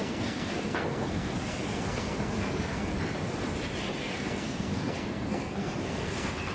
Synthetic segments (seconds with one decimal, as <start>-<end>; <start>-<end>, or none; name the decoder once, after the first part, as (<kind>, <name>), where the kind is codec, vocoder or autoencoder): 0.0-2.9 (codec, SNAC); 4.0-6.5